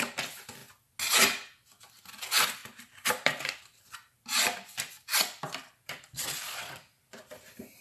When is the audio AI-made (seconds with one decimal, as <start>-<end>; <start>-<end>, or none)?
0.0-0.6; 1.8-7.8